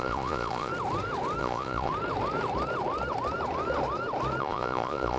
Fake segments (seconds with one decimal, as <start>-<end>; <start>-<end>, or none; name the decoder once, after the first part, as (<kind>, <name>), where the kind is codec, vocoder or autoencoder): 0.0-0.7 (vocoder, Vocos); 1.4-1.9; 4.4-5.2